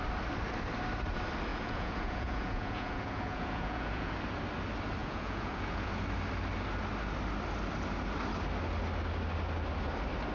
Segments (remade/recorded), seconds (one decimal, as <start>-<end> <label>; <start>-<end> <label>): 0.0-1.5 recorded; 1.5-4.1 remade; 4.1-5.0 recorded; 5.0-5.9 remade; 5.9-10.3 recorded